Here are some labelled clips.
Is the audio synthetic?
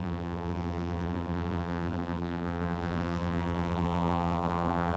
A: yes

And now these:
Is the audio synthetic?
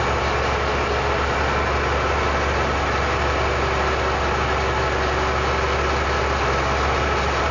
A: no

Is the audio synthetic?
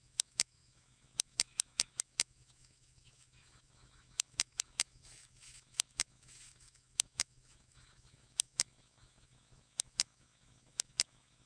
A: yes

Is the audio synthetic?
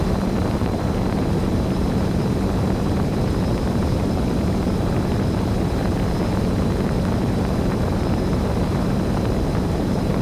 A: yes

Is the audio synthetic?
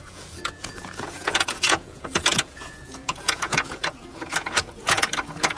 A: yes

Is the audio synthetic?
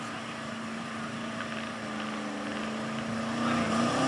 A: no